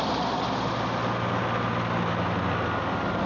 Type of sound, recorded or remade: recorded